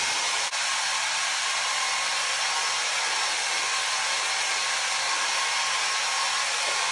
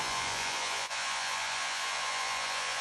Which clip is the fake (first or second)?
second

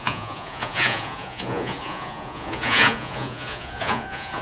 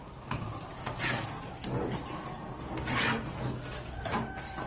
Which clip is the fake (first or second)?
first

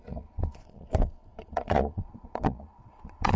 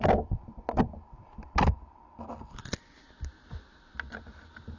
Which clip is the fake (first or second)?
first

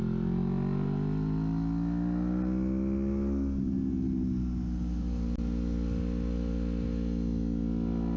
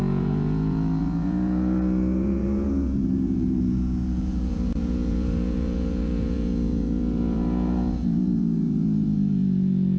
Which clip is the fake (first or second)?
second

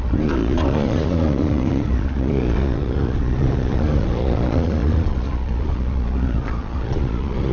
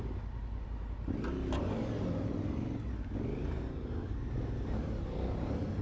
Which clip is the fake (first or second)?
first